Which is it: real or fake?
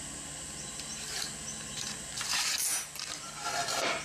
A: real